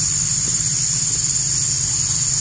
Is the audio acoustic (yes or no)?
yes